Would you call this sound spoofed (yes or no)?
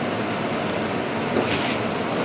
no